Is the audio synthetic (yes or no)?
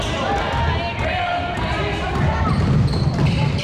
no